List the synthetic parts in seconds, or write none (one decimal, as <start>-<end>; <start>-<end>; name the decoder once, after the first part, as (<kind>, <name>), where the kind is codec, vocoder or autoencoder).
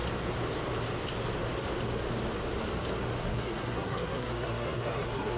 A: 3.2-5.4 (codec, SNAC)